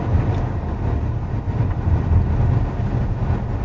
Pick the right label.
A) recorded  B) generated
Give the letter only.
A